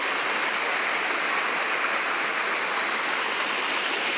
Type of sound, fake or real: real